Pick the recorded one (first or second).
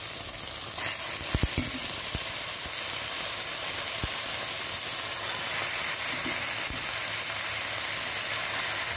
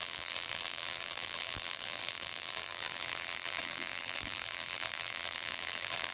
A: first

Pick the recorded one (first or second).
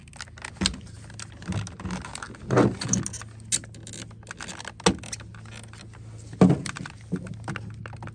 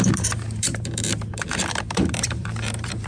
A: first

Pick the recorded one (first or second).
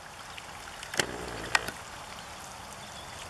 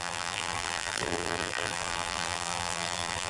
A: first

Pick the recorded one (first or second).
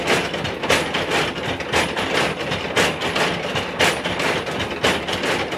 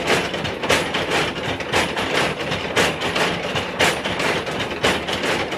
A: first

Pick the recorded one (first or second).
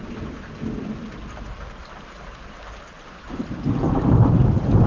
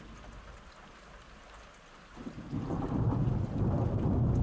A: second